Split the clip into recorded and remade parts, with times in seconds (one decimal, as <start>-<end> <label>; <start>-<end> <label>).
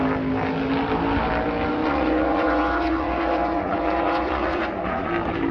0.0-1.8 recorded; 1.8-5.1 remade; 5.1-5.5 recorded